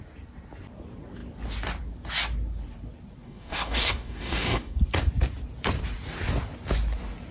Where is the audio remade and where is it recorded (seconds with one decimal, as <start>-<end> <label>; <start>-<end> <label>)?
0.0-3.2 recorded; 3.2-4.8 remade; 4.8-7.3 recorded